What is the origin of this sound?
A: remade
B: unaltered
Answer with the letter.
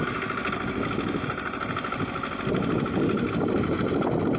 B